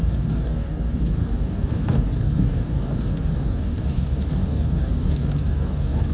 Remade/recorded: remade